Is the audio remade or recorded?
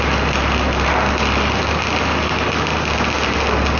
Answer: recorded